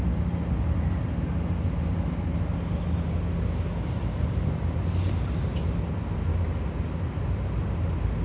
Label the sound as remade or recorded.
recorded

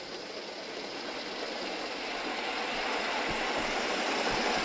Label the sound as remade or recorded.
recorded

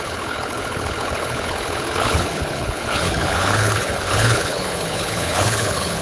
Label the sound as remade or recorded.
remade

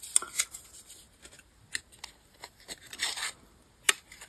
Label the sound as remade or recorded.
recorded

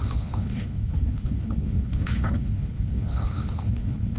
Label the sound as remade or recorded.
remade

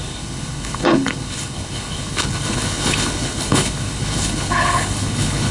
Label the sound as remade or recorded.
remade